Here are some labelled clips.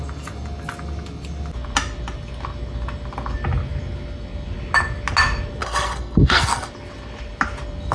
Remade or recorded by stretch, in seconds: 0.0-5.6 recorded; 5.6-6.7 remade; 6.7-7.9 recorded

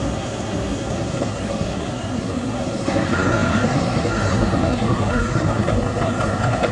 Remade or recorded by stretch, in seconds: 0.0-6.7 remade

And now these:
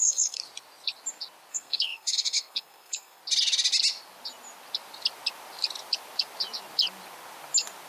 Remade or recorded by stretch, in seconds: 0.0-0.4 remade; 0.4-1.5 recorded; 1.5-3.2 remade; 3.2-7.9 recorded